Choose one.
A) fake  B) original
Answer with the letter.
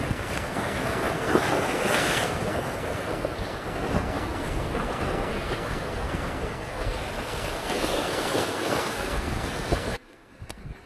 A